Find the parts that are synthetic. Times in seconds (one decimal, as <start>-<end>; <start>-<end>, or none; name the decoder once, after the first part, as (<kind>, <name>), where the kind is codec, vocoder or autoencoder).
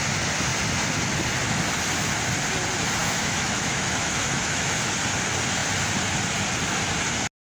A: 3.0-4.8 (autoencoder, DAC-VAE)